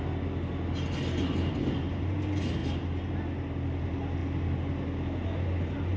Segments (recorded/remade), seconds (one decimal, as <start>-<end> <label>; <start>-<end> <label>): 0.0-6.0 recorded